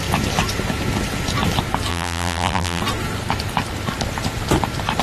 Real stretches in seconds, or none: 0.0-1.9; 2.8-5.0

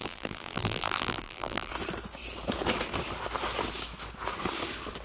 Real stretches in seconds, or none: 1.7-5.0

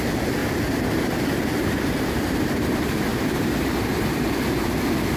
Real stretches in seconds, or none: 0.4-1.0; 3.1-3.9

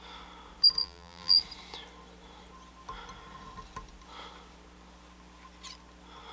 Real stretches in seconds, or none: 0.0-0.8; 1.4-6.3

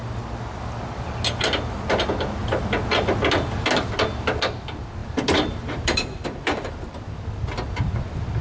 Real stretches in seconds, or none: 0.0-5.0; 6.7-8.4

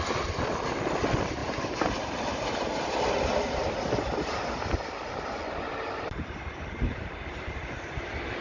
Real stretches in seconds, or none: 0.0-1.4; 3.1-8.4

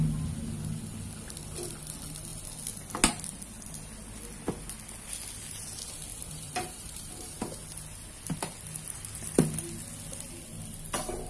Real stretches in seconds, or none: 0.0-6.1; 7.4-11.3